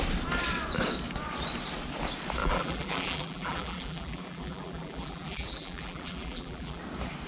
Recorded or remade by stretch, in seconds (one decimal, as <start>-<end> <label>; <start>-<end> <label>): 0.0-2.4 recorded; 2.4-6.8 remade; 6.8-7.3 recorded